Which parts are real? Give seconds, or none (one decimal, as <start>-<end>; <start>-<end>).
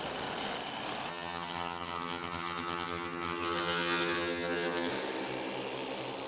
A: 0.0-1.1; 4.9-6.3